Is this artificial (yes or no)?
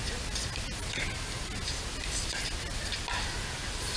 no